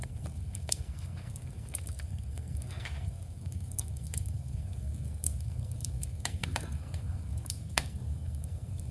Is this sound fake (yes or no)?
yes